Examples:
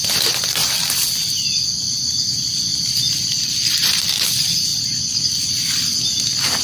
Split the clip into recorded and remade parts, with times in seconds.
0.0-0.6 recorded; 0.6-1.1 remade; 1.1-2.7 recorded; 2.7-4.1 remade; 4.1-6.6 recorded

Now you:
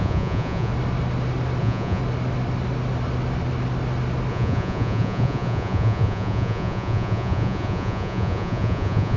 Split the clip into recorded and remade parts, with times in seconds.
0.0-0.7 remade; 0.7-1.6 recorded; 1.6-2.0 remade; 2.0-4.3 recorded; 4.3-9.2 remade

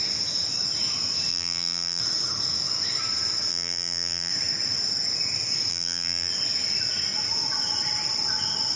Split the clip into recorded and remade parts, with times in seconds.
0.0-1.3 recorded; 1.3-2.0 remade; 2.0-3.5 recorded; 3.5-4.3 remade; 4.3-5.7 recorded; 5.7-6.3 remade; 6.3-8.8 recorded

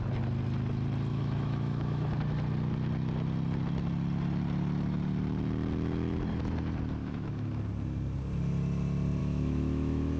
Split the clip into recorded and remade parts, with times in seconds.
0.0-1.1 recorded; 1.1-2.2 remade; 2.2-7.0 recorded; 7.0-7.6 remade; 7.6-9.2 recorded; 9.2-10.2 remade

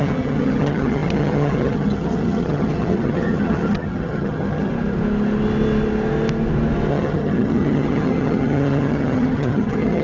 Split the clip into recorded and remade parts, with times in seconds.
0.0-4.7 remade; 4.7-6.9 recorded; 6.9-10.0 remade

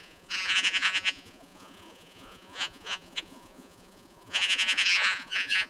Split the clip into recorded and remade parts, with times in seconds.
0.0-5.7 remade

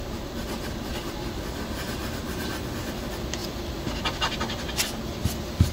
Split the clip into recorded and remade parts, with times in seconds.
0.0-5.7 recorded